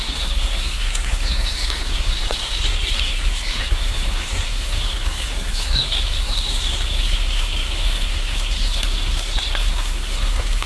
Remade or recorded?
remade